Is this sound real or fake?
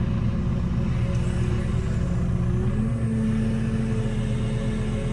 real